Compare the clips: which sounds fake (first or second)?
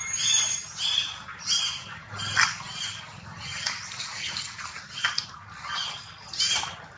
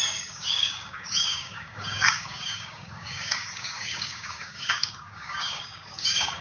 second